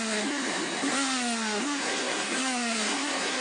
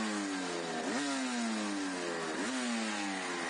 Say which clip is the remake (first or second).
first